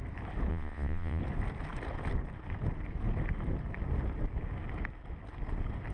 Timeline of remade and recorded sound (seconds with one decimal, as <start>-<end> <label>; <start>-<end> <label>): 0.0-0.5 recorded; 0.5-1.2 remade; 1.2-5.9 recorded